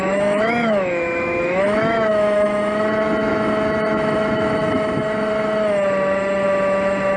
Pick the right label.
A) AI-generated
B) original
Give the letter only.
A